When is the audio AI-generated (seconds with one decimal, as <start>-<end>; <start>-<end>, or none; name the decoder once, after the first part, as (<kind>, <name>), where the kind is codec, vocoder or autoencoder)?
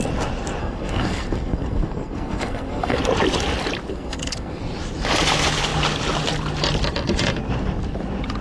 0.6-3.0 (codec, SNAC); 3.9-4.6